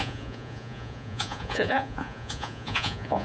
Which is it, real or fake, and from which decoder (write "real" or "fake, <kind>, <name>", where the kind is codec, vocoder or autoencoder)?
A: fake, vocoder, Vocos